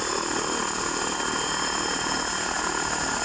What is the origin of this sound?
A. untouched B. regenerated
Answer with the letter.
A